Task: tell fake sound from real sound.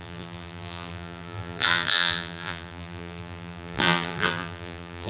fake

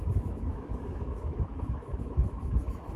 fake